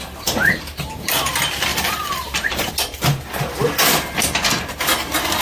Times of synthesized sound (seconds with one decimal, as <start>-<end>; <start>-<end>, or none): 1.7-2.7